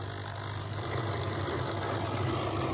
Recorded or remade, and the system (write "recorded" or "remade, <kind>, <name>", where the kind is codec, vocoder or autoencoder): recorded